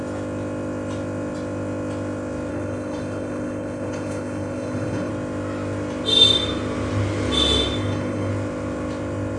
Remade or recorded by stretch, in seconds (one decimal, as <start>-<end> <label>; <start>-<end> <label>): 0.0-2.5 recorded; 2.5-5.1 remade; 5.1-7.8 recorded; 7.8-8.3 remade; 8.3-9.4 recorded